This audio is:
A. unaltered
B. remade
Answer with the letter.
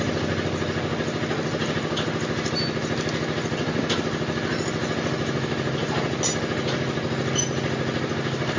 A